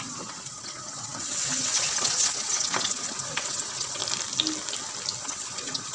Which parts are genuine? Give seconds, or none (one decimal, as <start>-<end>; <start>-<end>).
4.0-5.2